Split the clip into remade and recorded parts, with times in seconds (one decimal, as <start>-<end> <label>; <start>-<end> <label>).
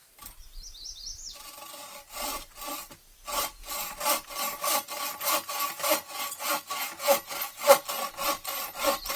0.0-9.2 recorded